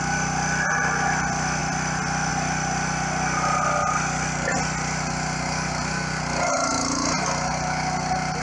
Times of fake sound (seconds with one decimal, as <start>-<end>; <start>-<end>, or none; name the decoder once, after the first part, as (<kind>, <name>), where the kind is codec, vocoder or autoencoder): none